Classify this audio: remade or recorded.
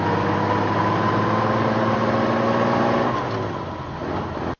recorded